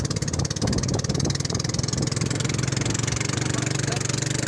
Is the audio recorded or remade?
recorded